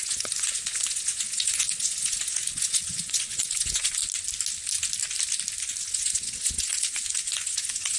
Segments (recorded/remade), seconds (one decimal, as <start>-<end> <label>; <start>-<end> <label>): 0.0-4.0 remade; 4.0-5.8 recorded; 5.8-8.0 remade